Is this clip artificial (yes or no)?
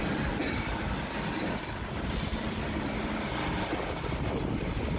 no